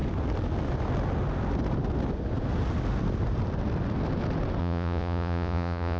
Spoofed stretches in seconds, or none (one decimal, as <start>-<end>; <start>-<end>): 4.6-6.0